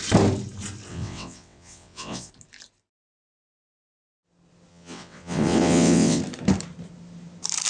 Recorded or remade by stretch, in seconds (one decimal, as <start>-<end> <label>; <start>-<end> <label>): 0.0-0.9 recorded; 0.9-2.3 remade; 2.3-4.7 recorded; 4.7-6.2 remade; 6.2-7.7 recorded